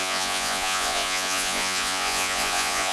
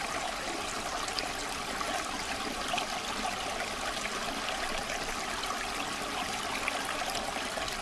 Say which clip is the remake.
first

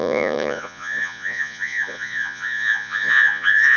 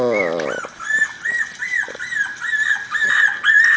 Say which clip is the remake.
first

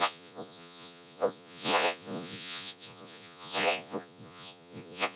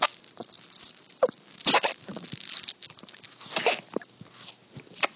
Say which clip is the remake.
first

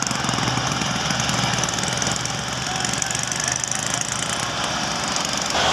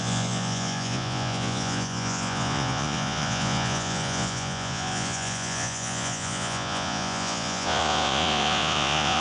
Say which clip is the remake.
second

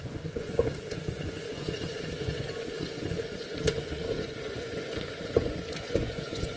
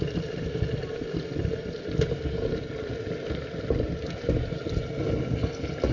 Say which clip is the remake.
first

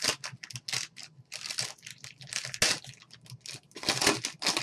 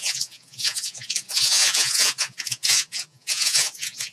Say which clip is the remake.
second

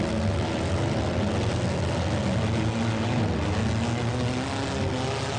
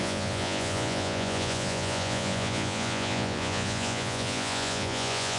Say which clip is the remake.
second